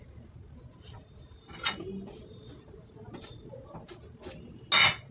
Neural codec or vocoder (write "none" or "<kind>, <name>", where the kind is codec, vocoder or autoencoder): none